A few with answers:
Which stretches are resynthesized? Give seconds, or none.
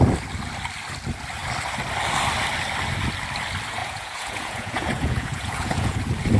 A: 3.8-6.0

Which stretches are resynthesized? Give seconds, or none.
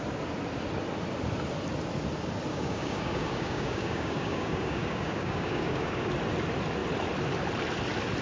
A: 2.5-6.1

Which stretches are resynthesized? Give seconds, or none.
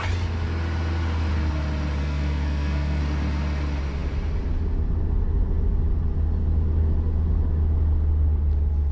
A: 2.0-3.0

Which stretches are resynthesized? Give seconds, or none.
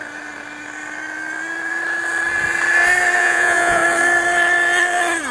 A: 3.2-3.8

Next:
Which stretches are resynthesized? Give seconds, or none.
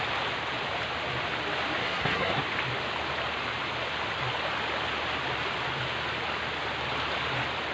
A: 1.8-2.4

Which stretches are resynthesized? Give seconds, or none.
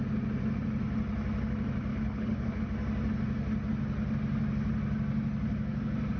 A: 1.9-2.6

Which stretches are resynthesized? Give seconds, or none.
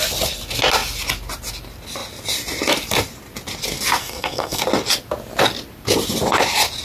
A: 4.0-4.6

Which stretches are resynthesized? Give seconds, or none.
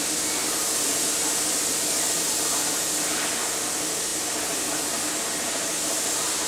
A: none